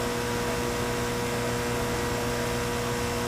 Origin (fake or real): real